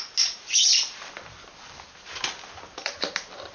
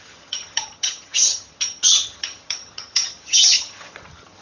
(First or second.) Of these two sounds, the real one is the first